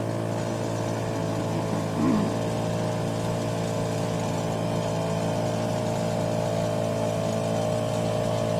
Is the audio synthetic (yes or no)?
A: no